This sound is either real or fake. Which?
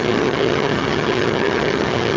fake